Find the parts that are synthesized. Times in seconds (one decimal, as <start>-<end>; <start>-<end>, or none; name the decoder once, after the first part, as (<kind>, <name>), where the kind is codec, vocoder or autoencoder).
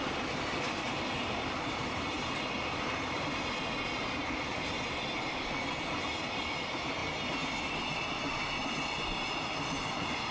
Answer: 0.8-3.6 (vocoder, BigVGAN v2)